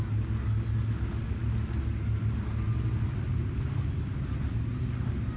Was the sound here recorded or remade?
recorded